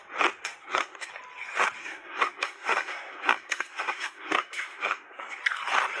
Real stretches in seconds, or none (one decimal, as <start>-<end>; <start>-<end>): 0.0-0.6; 1.1-1.8; 5.4-6.0